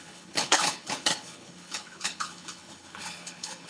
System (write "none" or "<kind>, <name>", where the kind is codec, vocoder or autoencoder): codec, HILCodec